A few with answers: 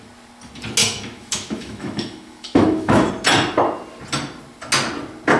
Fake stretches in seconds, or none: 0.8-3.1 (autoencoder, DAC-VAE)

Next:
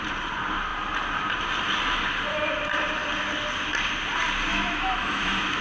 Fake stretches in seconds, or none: 4.5-5.6 (autoencoder, DAC-VAE)